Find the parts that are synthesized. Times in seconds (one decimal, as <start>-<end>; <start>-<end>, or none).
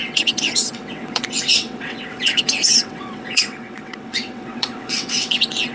0.0-5.7